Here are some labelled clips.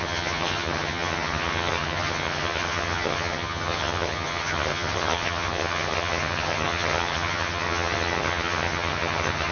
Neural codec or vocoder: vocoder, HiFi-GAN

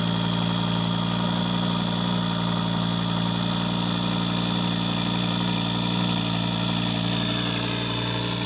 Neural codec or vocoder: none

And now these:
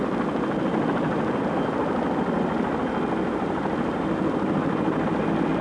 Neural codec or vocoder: none